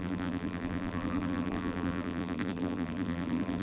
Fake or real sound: fake